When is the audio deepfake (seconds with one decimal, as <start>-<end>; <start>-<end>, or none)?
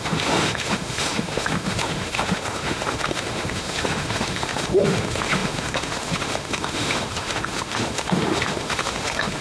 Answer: 0.0-9.4